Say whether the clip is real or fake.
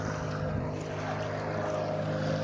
real